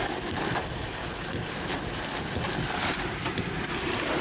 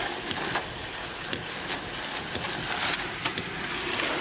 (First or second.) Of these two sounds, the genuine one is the second